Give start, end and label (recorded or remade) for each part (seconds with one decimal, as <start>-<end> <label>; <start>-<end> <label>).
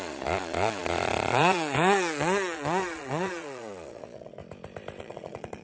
0.0-4.4 remade; 4.4-5.0 recorded; 5.0-5.6 remade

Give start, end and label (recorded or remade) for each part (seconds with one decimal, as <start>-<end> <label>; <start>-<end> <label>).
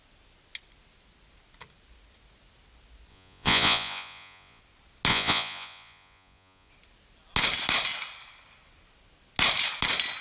0.0-3.1 recorded; 3.1-4.6 remade; 4.6-5.1 recorded; 5.1-6.7 remade; 6.7-10.2 recorded